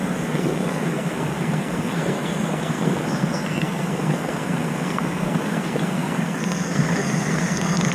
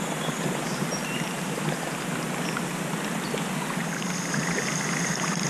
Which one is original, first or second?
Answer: second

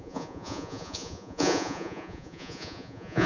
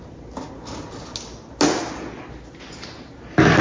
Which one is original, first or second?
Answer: second